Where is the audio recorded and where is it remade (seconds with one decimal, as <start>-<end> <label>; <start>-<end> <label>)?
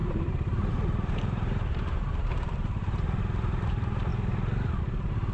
0.0-4.1 remade; 4.1-4.8 recorded; 4.8-5.3 remade